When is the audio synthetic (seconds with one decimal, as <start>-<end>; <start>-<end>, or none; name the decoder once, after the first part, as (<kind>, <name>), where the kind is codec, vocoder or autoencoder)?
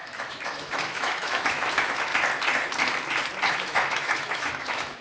0.0-2.1 (autoencoder, DAC-VAE); 3.5-5.0